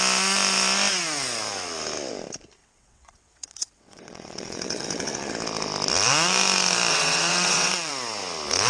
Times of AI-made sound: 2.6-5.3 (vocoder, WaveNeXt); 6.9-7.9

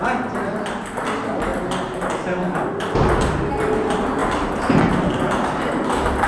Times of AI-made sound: none

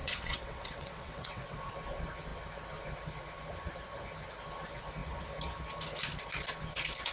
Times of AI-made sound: 0.0-1.7 (vocoder, WaveNeXt)

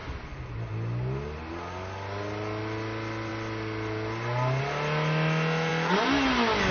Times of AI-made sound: none

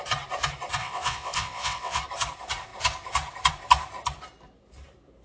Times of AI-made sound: 0.8-2.0 (vocoder, WaveNeXt)

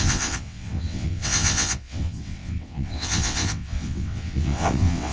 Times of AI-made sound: 0.0-5.1 (vocoder, WaveNeXt)